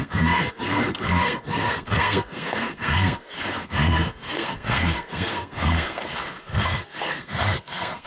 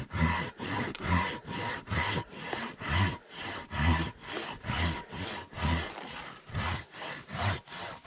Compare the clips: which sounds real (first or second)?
second